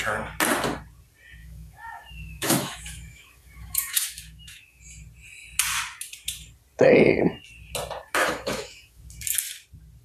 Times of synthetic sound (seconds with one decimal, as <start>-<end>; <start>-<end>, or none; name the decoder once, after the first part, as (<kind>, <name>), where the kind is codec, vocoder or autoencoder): 1.4-4.8 (autoencoder, DAC-VAE); 8.2-9.0